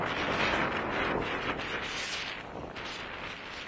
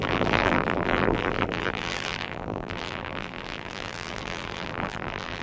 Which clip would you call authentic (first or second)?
first